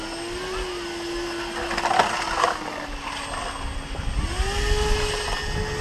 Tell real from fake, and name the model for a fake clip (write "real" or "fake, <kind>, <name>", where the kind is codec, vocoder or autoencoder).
real